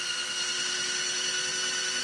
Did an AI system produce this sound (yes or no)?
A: no